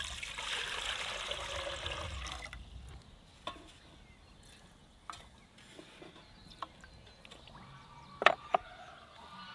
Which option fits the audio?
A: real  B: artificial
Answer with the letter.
A